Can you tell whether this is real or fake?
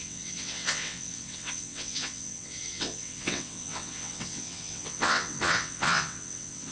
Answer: fake